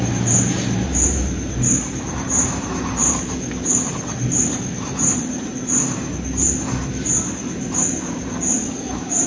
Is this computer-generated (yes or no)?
yes